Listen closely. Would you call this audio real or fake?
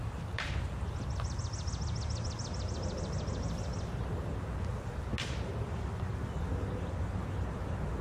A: real